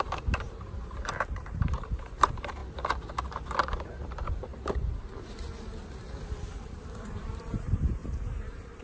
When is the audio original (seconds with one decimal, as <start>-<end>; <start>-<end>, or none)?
2.6-3.2; 4.5-6.5

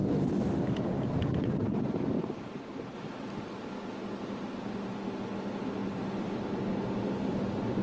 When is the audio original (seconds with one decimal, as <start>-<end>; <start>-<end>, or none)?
3.1-7.8

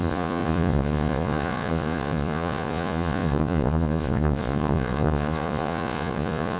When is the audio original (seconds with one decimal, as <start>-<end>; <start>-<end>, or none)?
none

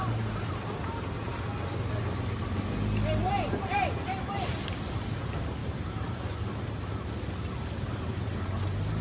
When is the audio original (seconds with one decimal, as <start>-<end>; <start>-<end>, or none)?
0.0-3.2; 4.9-5.6; 6.2-9.0

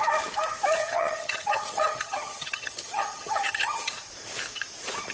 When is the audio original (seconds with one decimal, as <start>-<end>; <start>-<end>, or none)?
0.0-0.8; 3.9-5.1

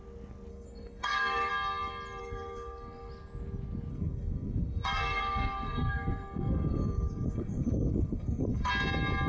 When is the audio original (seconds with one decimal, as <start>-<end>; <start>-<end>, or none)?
0.0-0.5; 1.5-2.2; 3.1-3.9; 8.7-9.3

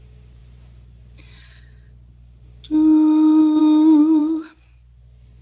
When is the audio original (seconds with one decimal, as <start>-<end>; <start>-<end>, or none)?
0.0-5.4

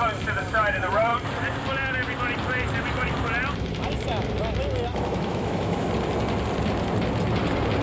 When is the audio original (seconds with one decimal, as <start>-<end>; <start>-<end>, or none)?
0.0-4.9; 5.9-7.8